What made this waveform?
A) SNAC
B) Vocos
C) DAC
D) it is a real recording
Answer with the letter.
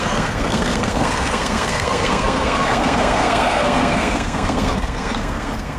A